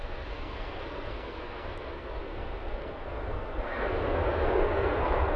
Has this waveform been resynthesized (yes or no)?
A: yes